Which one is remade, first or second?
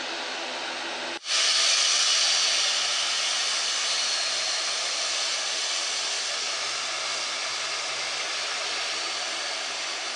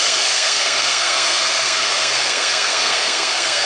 second